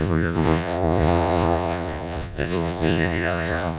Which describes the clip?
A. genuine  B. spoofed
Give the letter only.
B